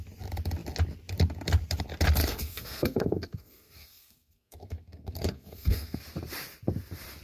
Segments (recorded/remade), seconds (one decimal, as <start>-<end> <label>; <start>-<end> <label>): 0.0-2.2 recorded; 2.2-6.0 remade; 6.0-7.2 recorded